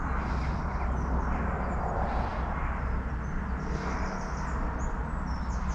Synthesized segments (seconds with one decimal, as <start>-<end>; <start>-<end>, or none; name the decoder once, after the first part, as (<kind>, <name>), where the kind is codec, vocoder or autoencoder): none